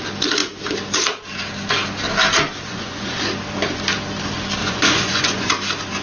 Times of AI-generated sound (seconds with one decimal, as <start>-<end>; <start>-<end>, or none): 2.7-3.2; 4.6-5.5